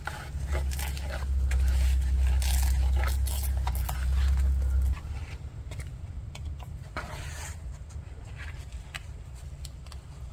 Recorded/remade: recorded